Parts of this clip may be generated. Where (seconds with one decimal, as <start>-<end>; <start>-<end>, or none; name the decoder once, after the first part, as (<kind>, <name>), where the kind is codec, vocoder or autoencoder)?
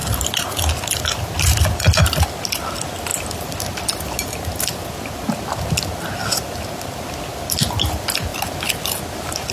none